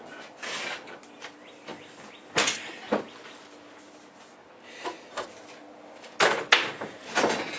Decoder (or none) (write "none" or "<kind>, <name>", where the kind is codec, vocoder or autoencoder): none